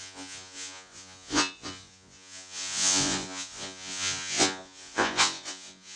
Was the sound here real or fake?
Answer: fake